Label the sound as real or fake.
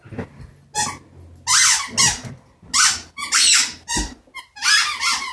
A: real